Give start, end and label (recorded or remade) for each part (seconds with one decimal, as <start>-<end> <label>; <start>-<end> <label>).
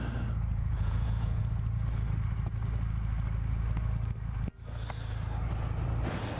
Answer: 0.0-0.5 recorded; 0.5-1.4 remade; 1.4-6.4 recorded